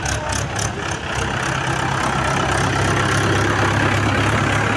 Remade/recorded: recorded